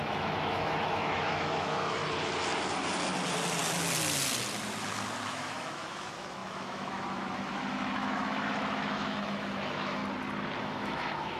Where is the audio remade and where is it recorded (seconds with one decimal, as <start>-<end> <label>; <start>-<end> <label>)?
0.0-2.0 remade; 2.0-5.3 recorded; 5.3-10.0 remade; 10.0-10.6 recorded; 10.6-11.4 remade